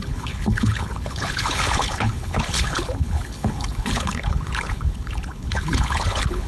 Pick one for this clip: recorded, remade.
remade